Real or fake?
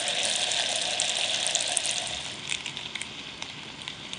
real